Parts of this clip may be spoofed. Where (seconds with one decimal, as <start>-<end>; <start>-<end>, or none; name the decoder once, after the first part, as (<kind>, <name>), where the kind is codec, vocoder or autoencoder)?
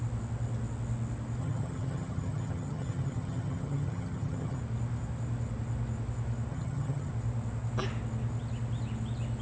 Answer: 1.4-4.6 (vocoder, HiFi-GAN); 6.5-7.1